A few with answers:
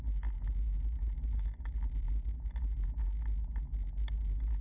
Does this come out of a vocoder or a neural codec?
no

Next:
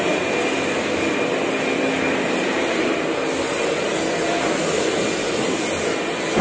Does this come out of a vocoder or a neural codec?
no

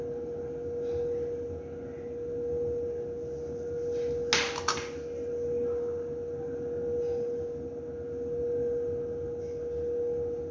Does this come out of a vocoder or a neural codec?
no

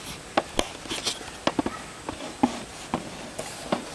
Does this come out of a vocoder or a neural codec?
no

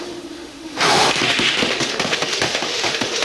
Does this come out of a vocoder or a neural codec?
yes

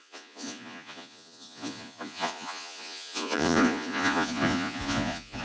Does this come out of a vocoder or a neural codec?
yes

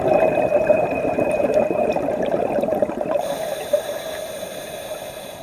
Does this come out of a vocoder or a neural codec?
yes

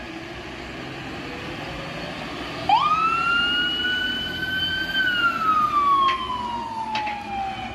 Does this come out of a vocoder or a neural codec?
no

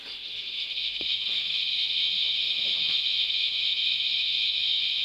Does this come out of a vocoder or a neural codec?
yes